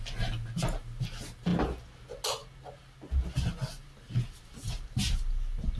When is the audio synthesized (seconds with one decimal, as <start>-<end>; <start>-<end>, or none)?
none